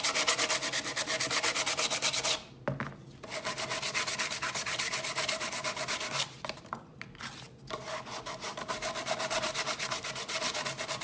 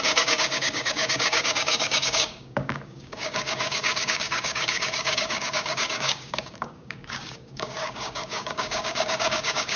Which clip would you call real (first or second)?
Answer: first